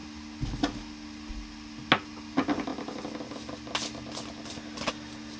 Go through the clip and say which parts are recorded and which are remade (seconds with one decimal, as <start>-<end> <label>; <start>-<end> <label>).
0.0-5.4 recorded